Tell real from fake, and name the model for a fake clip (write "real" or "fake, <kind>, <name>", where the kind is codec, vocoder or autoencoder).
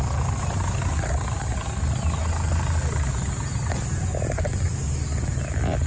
real